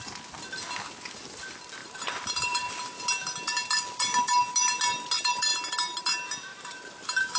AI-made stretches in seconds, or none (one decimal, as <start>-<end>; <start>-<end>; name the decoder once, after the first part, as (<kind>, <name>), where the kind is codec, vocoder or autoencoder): 1.8-2.7 (vocoder, BigVGAN v2); 6.5-7.4